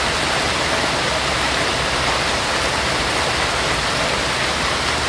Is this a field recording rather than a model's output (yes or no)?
yes